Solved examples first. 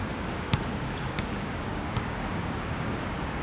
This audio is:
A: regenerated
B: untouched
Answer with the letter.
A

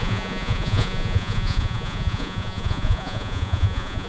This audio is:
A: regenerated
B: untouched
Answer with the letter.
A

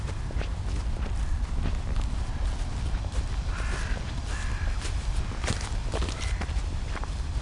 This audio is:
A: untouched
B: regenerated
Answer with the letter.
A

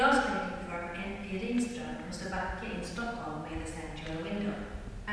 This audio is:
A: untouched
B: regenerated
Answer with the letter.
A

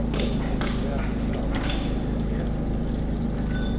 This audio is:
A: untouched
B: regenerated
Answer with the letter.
A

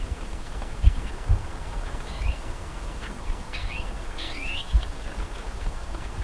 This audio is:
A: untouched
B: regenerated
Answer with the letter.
B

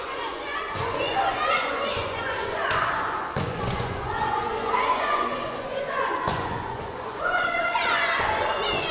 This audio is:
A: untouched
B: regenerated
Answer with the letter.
B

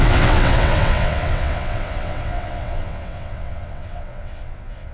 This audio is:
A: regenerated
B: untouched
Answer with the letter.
A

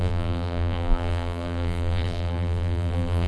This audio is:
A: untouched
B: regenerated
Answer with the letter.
B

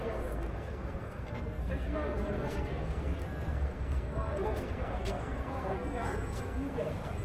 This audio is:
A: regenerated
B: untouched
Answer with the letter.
A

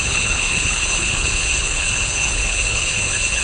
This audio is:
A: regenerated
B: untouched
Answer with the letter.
A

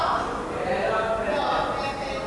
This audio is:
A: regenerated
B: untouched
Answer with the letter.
B